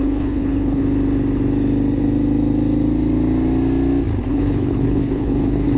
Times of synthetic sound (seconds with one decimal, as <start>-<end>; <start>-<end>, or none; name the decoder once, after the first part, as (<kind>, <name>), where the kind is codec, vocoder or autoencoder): 0.0-0.8 (codec, HILCodec); 4.3-5.8